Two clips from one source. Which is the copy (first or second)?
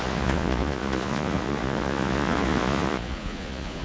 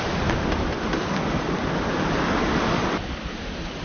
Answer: first